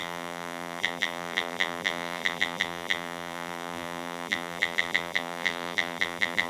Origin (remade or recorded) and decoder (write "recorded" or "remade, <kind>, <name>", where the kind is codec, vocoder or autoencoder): remade, vocoder, BigVGAN v2